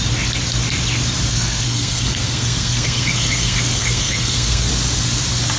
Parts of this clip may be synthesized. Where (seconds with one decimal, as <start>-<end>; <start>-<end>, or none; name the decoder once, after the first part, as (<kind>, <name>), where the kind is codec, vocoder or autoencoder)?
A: 1.3-4.7 (codec, SNAC)